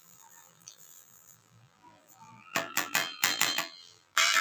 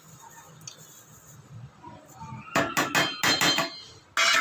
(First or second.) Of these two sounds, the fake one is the first